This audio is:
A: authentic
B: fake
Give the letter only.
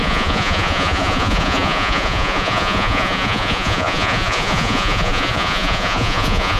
B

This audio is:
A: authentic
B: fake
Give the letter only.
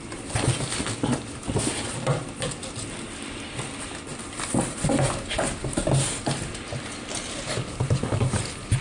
A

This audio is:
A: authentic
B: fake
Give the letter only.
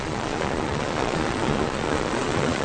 B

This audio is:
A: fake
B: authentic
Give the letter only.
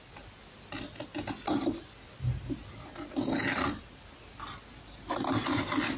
B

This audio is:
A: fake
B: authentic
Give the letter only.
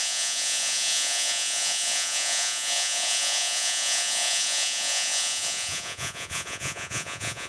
A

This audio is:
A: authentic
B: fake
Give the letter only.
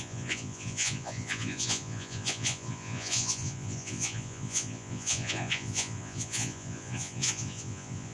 B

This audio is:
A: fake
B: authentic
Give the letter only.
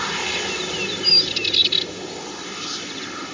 B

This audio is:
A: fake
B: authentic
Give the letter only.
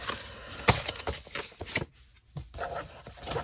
B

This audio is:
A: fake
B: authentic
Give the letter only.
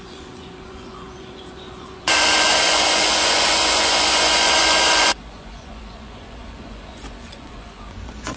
A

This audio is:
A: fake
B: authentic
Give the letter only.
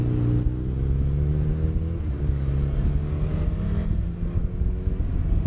B